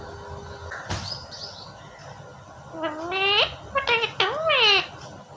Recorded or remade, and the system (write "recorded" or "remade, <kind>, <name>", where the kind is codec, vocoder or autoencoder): recorded